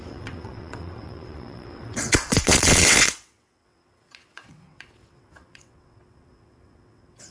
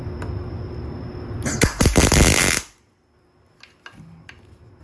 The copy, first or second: first